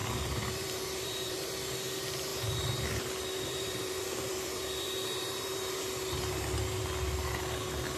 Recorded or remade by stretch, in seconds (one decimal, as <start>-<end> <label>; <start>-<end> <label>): 0.0-1.5 remade; 1.5-2.3 recorded; 2.3-6.3 remade; 6.3-8.0 recorded